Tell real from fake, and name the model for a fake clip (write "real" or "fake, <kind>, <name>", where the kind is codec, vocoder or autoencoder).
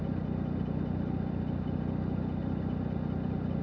real